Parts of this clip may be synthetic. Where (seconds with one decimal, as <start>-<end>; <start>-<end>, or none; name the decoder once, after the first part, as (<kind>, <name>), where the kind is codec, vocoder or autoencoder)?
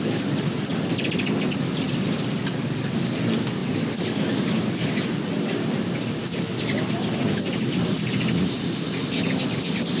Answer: none